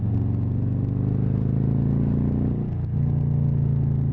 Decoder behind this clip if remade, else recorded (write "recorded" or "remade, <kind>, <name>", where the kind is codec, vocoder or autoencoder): recorded